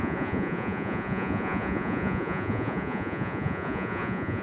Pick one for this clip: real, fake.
fake